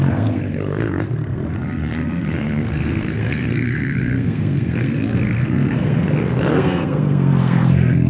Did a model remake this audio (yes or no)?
yes